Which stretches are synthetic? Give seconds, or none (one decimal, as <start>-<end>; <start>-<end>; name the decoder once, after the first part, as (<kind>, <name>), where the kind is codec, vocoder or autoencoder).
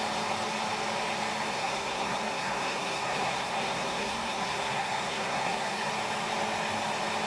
1.5-5.9 (codec, SNAC)